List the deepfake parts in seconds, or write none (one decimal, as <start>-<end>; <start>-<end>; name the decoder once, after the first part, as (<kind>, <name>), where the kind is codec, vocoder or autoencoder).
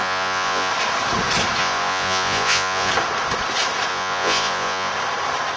0.0-0.7 (vocoder, Vocos); 1.6-2.9; 3.9-4.9